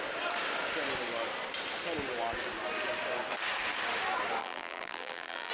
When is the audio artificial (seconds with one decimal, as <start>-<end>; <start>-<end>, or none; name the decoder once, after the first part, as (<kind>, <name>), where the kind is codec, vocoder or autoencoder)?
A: 4.4-5.5 (vocoder, BigVGAN v2)